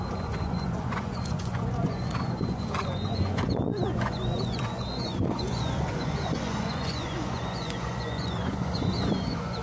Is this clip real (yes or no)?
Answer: no